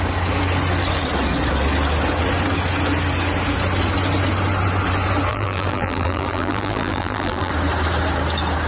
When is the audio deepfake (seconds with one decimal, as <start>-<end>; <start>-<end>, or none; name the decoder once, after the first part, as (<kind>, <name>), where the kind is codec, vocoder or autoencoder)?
5.3-7.5 (vocoder, BigVGAN v2)